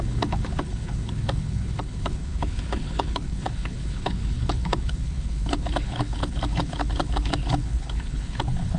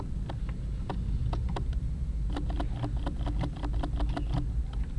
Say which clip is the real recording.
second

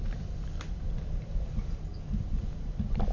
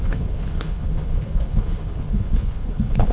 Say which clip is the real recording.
first